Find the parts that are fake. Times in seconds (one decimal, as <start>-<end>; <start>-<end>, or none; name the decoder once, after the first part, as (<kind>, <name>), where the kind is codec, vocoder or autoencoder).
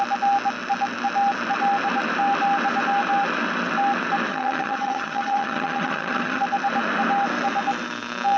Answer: 4.3-6.4 (vocoder, HiFi-GAN)